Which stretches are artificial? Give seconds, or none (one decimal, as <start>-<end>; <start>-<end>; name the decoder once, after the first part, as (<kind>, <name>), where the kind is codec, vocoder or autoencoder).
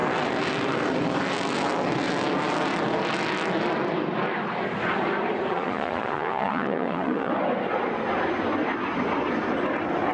5.5-7.3 (vocoder, Vocos)